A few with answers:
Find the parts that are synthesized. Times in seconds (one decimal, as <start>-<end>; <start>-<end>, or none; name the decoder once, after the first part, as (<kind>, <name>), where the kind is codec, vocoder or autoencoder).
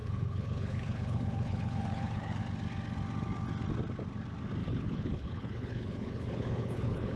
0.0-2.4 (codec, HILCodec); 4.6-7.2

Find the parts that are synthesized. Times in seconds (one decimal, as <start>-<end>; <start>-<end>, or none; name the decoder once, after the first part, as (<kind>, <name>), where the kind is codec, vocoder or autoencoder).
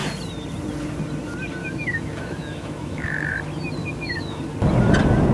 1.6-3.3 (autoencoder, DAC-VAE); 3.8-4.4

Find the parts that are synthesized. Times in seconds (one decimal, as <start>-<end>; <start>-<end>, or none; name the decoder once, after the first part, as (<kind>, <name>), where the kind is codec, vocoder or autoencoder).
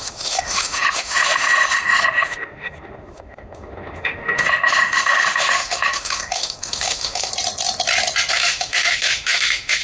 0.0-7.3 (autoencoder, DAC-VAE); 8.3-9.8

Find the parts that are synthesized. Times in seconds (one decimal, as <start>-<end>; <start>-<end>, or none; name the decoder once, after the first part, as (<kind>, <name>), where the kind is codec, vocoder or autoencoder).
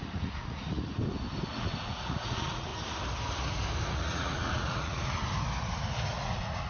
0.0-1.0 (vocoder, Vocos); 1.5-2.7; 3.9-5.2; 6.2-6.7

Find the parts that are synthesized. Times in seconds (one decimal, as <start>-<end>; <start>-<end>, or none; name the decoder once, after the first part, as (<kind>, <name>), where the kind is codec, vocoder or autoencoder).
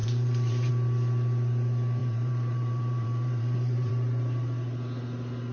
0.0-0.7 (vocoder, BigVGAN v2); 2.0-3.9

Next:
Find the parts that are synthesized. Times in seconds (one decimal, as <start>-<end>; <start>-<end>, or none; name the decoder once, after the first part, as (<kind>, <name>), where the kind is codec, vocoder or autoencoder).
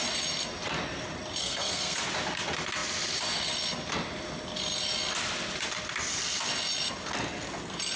1.4-2.0 (codec, SNAC)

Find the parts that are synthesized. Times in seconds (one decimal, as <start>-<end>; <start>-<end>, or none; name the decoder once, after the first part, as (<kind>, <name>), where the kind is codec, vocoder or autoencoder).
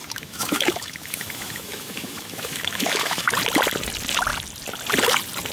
0.0-3.3 (autoencoder, DAC-VAE)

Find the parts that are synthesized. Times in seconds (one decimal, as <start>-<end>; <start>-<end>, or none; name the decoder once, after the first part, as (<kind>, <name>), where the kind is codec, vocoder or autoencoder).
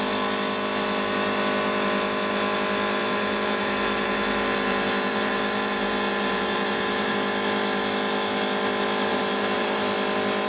3.0-7.1 (vocoder, BigVGAN v2); 9.1-9.8